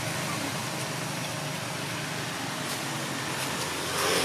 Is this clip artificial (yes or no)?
no